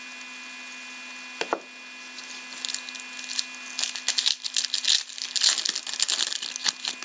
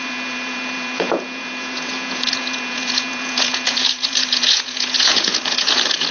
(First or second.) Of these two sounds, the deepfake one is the second